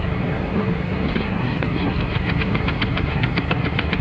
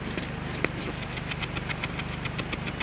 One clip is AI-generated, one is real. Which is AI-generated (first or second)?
first